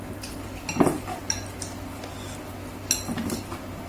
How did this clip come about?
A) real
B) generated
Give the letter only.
A